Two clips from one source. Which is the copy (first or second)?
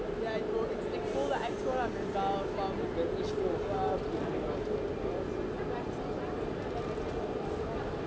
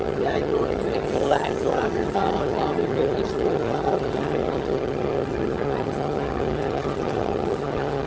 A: second